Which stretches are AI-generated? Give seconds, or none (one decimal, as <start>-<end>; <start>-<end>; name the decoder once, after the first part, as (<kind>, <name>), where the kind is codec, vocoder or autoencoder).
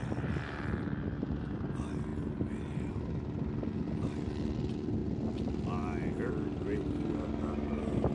none